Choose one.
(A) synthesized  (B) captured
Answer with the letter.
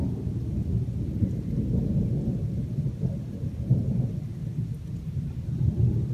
B